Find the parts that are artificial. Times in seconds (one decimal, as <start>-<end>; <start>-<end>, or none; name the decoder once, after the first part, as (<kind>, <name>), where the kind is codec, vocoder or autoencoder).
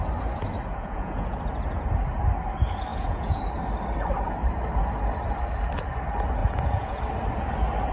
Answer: 0.7-1.4 (vocoder, Vocos); 2.9-3.4; 6.4-7.0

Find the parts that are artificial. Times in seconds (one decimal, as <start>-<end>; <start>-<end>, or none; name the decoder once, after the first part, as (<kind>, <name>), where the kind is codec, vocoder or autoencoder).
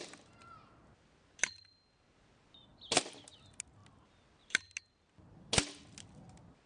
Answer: none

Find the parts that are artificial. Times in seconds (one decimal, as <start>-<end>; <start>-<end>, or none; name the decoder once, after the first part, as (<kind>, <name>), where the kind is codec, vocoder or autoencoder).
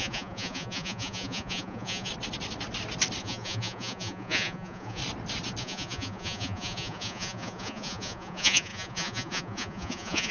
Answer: 0.0-2.1 (vocoder, Vocos); 3.2-5.0; 5.6-10.3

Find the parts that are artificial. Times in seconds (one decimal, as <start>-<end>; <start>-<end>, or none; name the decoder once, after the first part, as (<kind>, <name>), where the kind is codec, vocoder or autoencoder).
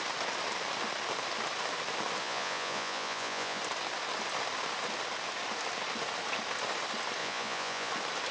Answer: 2.2-3.6 (vocoder, Vocos); 7.2-7.9